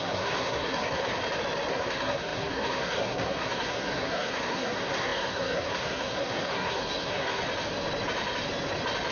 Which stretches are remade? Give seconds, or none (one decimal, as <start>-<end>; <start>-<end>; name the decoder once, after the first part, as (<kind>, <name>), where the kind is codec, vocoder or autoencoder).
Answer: 0.0-1.1 (codec, SNAC); 1.7-7.4

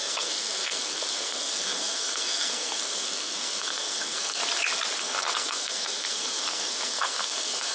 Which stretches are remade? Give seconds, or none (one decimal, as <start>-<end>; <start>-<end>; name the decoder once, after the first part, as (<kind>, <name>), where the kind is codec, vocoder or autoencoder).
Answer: 0.0-4.4 (codec, SNAC); 5.0-7.7

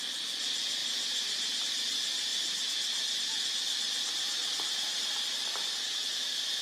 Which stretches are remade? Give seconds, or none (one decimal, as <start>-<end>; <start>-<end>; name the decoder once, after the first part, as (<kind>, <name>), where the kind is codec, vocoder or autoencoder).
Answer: none

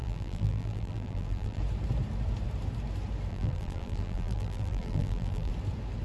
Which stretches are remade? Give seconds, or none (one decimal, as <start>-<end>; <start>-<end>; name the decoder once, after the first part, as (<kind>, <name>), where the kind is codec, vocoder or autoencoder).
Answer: 0.0-1.6 (vocoder, BigVGAN v2); 3.3-5.5

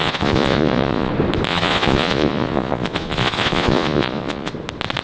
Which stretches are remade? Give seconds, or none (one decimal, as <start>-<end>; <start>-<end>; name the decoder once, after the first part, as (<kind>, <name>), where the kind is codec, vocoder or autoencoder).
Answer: 0.0-1.1 (vocoder, Vocos); 1.5-4.5

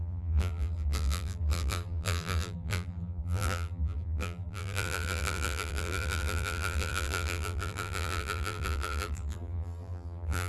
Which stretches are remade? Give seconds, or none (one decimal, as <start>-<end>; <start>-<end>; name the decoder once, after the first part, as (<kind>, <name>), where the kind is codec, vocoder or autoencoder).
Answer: 0.0-10.5 (vocoder, BigVGAN v2)